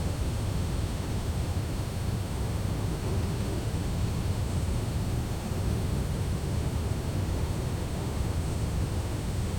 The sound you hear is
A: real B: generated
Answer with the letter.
B